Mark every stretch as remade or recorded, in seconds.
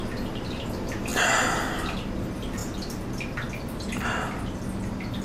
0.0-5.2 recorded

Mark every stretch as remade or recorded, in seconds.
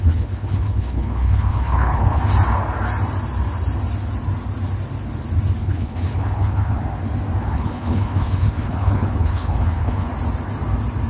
0.0-2.2 remade; 2.2-5.6 recorded; 5.6-6.8 remade; 6.8-7.4 recorded; 7.4-10.1 remade; 10.1-11.1 recorded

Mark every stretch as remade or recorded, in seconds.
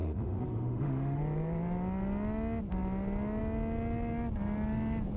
0.0-1.2 remade; 1.2-5.2 recorded